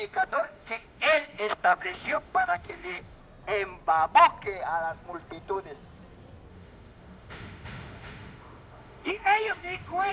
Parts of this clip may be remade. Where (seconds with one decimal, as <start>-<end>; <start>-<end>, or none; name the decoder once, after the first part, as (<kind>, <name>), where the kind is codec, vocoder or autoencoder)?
0.0-3.2 (autoencoder, DAC-VAE); 6.5-10.1